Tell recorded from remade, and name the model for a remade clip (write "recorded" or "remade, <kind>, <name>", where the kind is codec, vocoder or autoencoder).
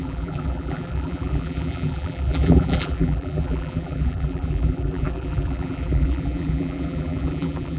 remade, vocoder, BigVGAN v2